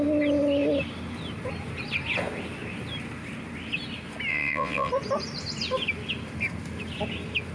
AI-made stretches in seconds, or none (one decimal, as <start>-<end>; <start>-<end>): 4.3-4.9